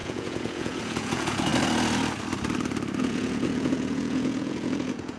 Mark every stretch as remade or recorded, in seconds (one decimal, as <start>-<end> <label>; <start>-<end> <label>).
0.0-1.5 remade; 1.5-3.0 recorded; 3.0-5.2 remade